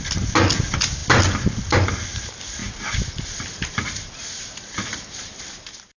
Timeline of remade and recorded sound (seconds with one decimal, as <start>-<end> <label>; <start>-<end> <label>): 0.0-2.6 recorded; 2.6-5.4 remade; 5.4-6.0 recorded